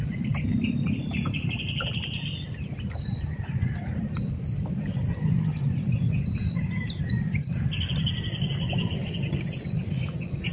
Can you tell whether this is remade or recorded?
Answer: recorded